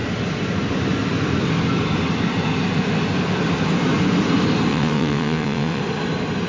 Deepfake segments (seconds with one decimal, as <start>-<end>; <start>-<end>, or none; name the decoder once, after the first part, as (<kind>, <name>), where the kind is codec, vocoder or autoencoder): 4.7-5.8 (vocoder, WaveNeXt)

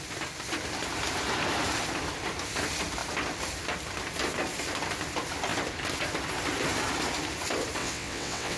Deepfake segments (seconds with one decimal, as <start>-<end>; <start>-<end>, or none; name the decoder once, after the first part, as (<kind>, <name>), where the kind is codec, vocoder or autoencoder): 7.8-8.6 (vocoder, WaveNeXt)

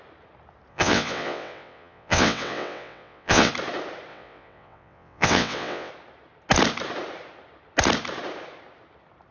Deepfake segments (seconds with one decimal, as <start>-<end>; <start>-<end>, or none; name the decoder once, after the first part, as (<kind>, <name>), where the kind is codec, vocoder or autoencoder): 0.7-3.5 (vocoder, WaveNeXt); 4.1-5.9

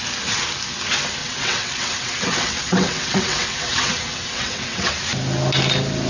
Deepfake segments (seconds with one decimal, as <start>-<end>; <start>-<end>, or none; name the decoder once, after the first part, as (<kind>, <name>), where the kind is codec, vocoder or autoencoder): 1.2-4.9 (vocoder, WaveNeXt)

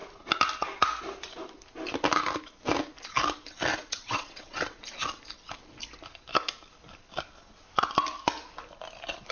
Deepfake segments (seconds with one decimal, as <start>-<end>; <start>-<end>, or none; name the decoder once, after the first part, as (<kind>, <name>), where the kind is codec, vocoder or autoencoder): 3.7-4.8 (vocoder, WaveNeXt)